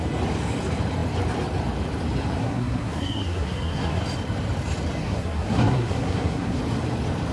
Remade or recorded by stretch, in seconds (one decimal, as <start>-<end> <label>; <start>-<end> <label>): 0.0-2.4 recorded; 2.4-4.0 remade; 4.0-5.0 recorded; 5.0-6.6 remade; 6.6-7.3 recorded